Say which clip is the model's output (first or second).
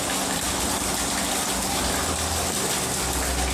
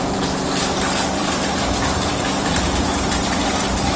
second